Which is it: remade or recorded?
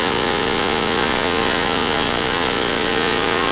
remade